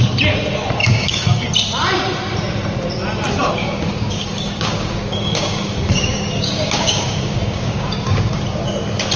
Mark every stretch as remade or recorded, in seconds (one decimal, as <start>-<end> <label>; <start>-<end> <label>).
0.0-0.8 recorded; 0.8-1.4 remade; 1.4-3.6 recorded; 3.6-8.4 remade; 8.4-9.2 recorded